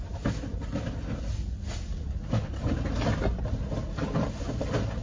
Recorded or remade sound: recorded